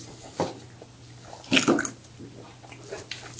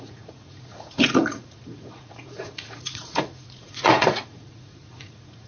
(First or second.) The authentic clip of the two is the first